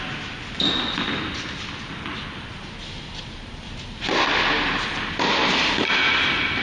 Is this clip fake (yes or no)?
no